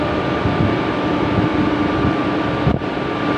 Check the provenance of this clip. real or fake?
real